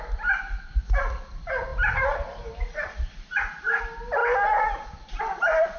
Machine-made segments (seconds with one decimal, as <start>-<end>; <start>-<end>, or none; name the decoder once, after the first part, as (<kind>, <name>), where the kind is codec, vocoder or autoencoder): none